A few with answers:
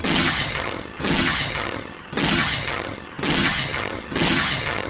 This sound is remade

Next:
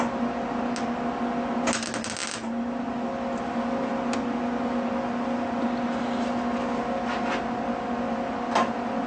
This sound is recorded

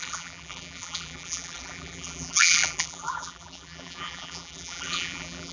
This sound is remade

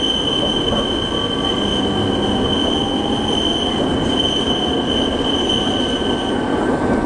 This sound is recorded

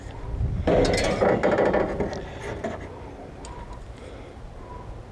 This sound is recorded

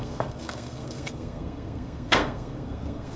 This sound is remade